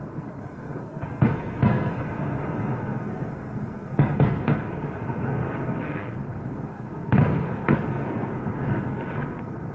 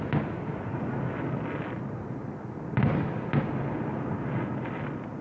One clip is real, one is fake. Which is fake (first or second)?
first